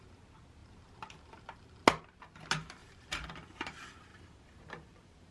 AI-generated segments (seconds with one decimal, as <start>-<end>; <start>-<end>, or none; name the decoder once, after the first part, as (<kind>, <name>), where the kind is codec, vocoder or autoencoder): 2.8-3.3 (vocoder, BigVGAN v2); 4.1-5.3